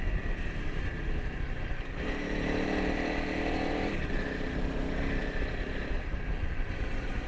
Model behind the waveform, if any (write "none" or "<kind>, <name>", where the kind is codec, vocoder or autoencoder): vocoder, BigVGAN v2